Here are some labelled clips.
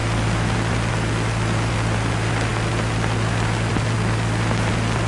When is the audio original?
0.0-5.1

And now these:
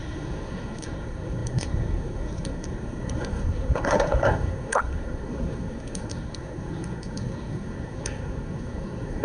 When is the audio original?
none

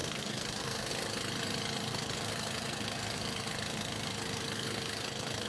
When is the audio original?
0.9-1.9

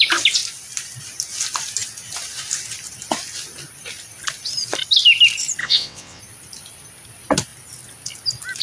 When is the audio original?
0.0-5.6; 6.2-8.6

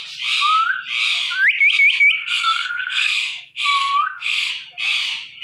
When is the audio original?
0.0-2.2; 4.5-5.4

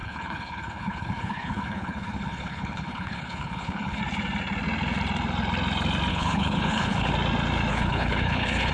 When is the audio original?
4.0-6.1; 7.1-7.7

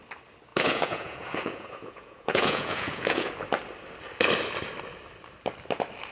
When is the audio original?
0.0-0.5; 3.3-6.1

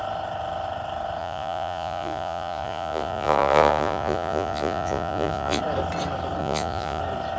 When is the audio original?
0.0-1.2; 5.6-6.4; 7.0-7.4